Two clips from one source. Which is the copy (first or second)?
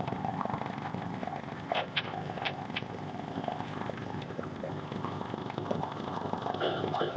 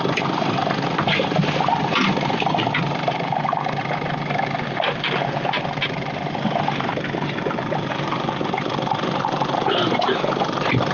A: first